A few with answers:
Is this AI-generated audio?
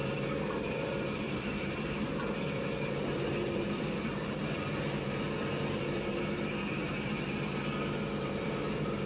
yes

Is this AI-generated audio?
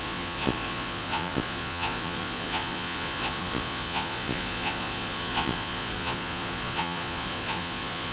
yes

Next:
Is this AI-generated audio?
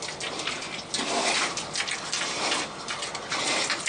no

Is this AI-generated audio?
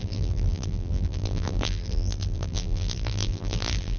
yes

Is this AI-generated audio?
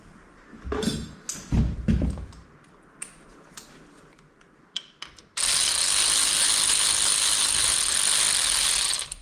no